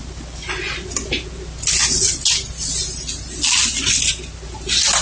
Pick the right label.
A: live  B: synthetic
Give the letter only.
A